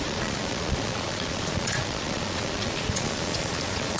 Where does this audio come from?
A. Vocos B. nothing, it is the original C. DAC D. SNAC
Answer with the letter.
A